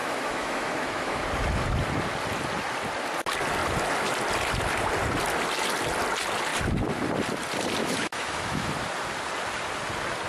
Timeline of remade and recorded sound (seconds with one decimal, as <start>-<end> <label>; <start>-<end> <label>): 0.0-1.2 remade; 1.2-7.8 recorded; 7.8-8.7 remade; 8.7-10.3 recorded